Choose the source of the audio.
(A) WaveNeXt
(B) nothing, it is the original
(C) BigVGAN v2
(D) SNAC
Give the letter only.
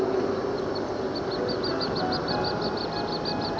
B